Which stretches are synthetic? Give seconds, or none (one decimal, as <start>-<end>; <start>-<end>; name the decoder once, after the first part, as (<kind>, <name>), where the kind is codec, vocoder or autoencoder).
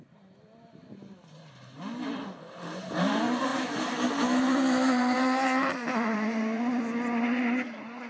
3.5-6.8 (vocoder, BigVGAN v2)